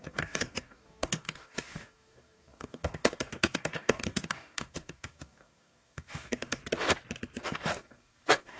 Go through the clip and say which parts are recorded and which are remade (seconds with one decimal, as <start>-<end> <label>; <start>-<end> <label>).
0.0-6.6 remade; 6.6-7.4 recorded; 7.4-8.6 remade

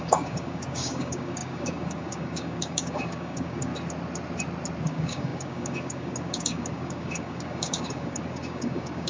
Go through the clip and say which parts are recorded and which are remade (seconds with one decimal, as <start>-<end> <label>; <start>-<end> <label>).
0.0-3.7 remade; 3.7-4.8 recorded; 4.8-9.1 remade

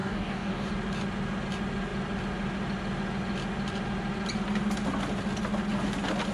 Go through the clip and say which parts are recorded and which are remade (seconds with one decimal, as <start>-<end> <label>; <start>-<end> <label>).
0.0-0.7 remade; 0.7-6.3 recorded

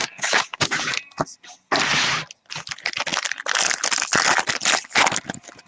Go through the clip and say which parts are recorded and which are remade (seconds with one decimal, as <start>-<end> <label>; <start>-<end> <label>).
0.0-0.8 remade; 0.8-5.7 recorded